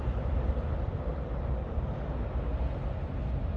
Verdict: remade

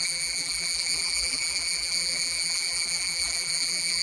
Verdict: remade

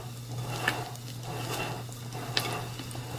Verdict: recorded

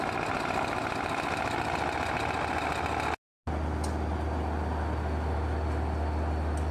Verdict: recorded